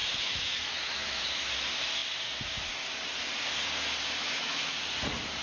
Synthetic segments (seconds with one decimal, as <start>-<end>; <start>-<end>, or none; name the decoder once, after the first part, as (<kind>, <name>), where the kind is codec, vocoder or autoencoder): 0.0-1.5 (autoencoder, DAC-VAE); 4.2-4.7